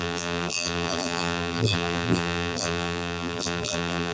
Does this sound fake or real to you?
fake